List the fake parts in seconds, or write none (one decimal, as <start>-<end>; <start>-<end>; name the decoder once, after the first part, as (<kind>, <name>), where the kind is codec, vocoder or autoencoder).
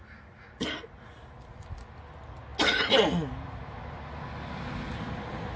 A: none